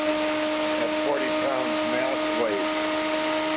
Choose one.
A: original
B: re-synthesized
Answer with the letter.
A